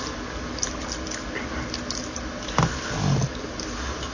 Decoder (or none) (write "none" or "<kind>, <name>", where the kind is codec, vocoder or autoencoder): none